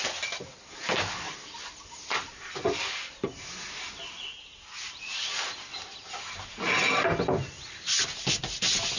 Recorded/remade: recorded